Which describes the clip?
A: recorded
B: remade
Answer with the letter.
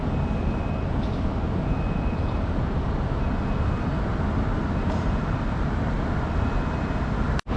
A